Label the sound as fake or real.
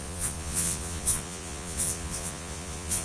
fake